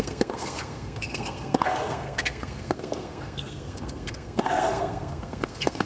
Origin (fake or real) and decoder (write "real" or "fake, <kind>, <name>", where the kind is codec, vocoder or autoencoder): fake, codec, SNAC